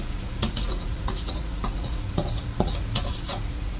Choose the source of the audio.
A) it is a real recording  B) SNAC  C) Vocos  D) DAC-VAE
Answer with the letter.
C